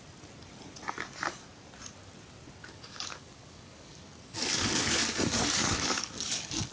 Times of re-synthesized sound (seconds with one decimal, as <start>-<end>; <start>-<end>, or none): 2.6-6.7